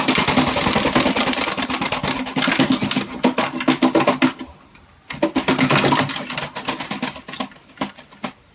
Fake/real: real